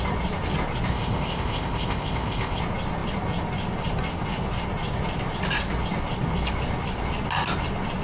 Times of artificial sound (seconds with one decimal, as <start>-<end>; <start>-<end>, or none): 0.9-2.6